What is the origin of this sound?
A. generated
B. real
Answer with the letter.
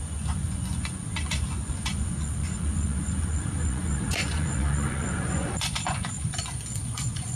A